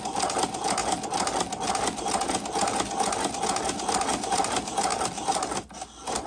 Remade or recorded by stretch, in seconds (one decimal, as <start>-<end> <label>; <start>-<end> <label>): 0.0-6.3 recorded